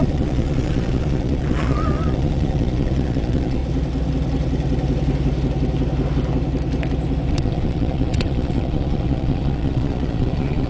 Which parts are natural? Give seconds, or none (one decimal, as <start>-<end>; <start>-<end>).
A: 3.6-7.3